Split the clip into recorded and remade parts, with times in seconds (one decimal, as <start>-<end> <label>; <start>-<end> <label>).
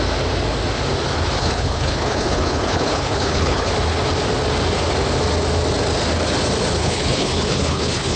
0.0-1.4 recorded; 1.4-3.7 remade; 3.7-6.8 recorded; 6.8-8.2 remade